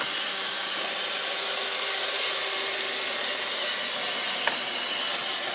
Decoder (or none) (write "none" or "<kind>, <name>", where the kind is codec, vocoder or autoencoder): none